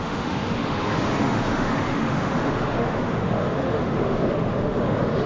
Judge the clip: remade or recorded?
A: remade